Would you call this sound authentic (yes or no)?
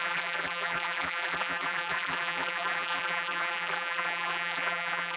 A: no